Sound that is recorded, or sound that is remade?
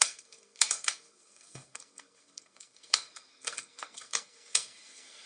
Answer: remade